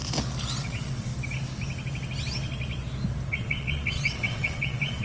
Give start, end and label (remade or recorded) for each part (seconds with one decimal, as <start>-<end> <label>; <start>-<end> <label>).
0.0-0.6 recorded; 0.6-1.1 remade; 1.1-3.3 recorded; 3.3-5.0 remade